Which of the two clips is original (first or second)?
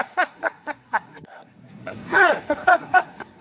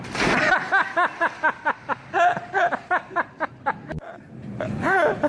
second